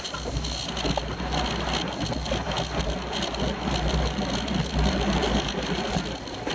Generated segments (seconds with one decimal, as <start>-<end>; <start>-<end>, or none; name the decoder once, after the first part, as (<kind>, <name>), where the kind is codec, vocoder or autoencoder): none